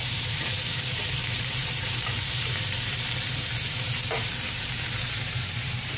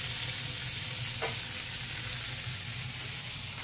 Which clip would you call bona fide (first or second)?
second